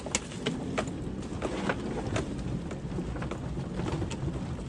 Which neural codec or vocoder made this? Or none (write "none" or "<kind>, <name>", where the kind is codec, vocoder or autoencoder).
none